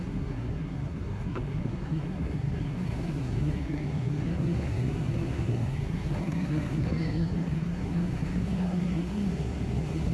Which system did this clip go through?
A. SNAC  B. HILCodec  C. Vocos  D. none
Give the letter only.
A